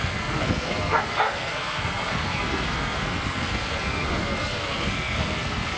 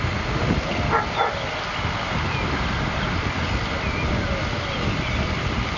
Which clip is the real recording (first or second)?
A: second